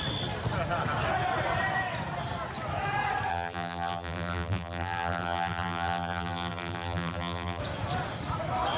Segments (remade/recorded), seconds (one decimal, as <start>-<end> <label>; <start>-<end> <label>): 0.0-3.3 recorded; 3.3-7.6 remade; 7.6-8.8 recorded

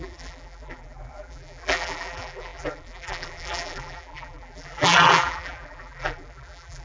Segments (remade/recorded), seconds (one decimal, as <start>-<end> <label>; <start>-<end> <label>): 0.0-6.8 remade

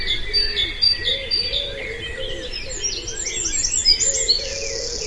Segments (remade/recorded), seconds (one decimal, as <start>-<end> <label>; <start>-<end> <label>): 0.0-5.1 recorded